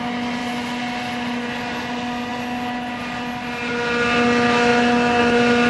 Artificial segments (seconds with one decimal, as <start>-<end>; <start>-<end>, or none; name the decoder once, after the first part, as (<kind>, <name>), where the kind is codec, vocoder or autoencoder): none